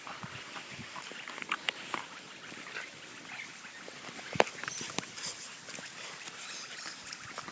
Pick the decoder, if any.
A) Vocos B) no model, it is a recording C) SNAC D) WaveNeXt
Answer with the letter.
B